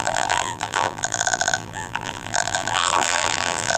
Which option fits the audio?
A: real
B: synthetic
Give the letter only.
B